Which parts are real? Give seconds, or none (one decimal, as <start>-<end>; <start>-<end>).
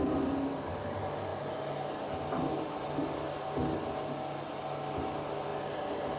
0.0-6.2